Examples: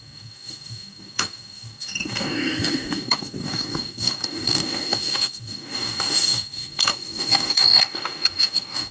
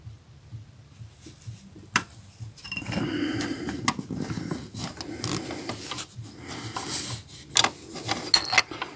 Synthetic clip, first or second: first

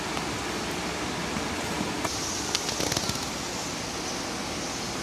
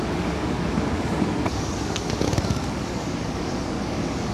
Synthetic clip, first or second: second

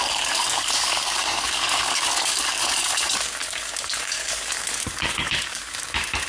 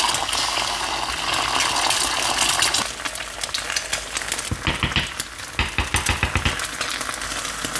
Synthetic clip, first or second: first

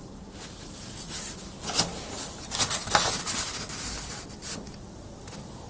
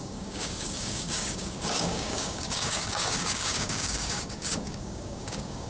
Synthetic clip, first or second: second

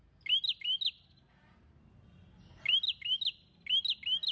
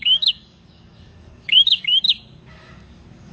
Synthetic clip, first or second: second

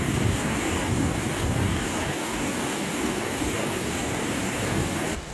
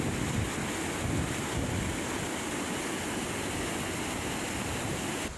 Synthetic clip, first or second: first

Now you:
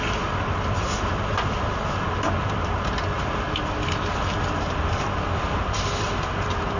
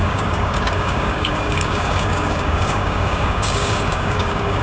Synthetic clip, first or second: second